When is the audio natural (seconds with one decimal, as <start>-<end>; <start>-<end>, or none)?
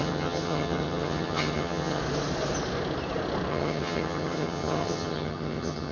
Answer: 2.0-3.5